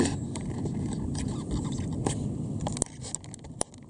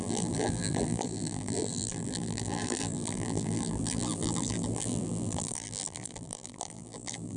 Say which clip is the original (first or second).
first